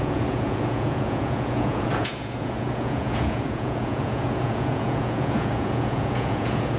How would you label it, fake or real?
fake